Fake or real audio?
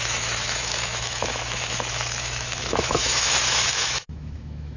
fake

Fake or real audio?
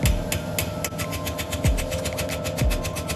real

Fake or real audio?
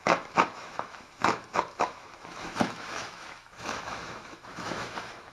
fake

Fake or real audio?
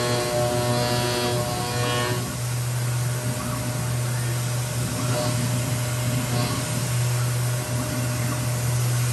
real